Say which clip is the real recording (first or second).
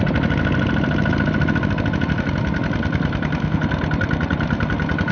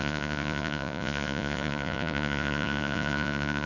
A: first